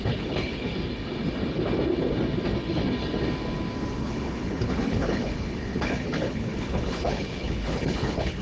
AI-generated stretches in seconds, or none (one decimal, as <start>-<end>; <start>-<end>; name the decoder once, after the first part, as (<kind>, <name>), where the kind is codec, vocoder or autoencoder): 0.0-0.7 (codec, HILCodec); 4.0-8.4